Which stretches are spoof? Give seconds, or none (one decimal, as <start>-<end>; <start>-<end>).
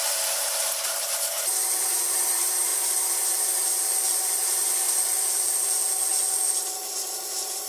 0.0-2.7; 3.8-6.1; 7.1-7.7